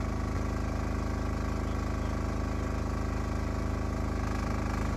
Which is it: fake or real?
real